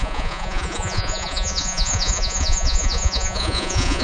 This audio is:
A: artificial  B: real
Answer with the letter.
A